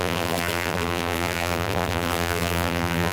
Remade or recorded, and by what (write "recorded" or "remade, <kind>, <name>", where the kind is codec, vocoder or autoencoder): remade, vocoder, BigVGAN v2